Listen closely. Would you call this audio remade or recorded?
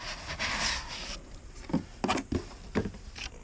recorded